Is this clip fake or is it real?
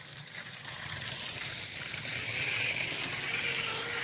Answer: real